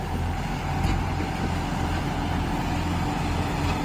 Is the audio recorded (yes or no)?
yes